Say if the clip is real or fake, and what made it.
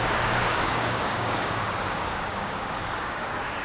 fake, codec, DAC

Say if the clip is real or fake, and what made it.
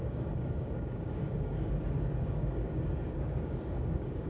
fake, codec, DAC